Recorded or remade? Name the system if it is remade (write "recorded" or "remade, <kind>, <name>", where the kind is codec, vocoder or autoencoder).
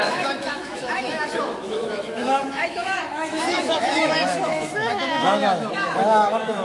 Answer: remade, autoencoder, DAC-VAE